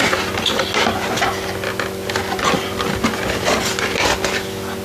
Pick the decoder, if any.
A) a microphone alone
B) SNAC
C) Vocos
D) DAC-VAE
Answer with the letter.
A